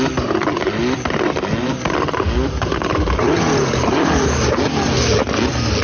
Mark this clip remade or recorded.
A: recorded